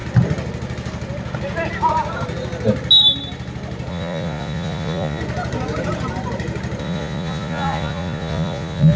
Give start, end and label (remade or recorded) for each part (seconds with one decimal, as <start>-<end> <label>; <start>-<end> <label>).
0.0-3.9 recorded; 3.9-5.2 remade; 5.2-6.8 recorded; 6.8-9.0 remade